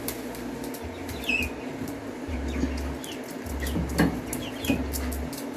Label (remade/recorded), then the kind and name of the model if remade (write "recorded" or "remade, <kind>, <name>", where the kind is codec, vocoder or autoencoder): recorded